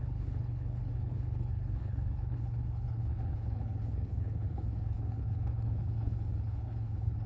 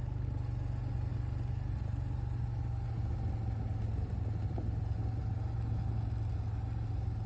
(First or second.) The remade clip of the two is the first